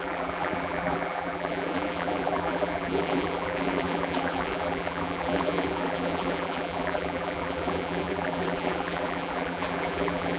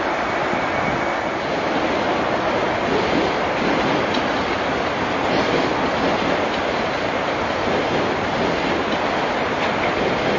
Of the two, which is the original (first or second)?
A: second